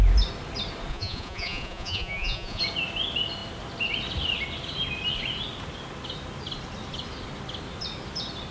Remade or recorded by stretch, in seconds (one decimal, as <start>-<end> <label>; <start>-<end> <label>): 0.0-0.9 recorded; 0.9-2.6 remade; 2.6-8.5 recorded